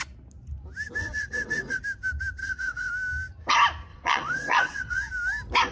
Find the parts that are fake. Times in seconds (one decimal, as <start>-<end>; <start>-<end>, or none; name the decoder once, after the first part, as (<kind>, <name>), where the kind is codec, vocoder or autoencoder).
1.0-1.8 (vocoder, WaveNeXt); 2.4-2.9; 3.9-5.1